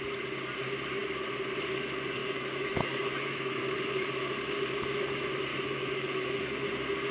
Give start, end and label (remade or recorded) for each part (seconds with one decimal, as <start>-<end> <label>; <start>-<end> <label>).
0.0-2.2 recorded; 2.2-3.6 remade; 3.6-5.5 recorded; 5.5-6.4 remade; 6.4-7.1 recorded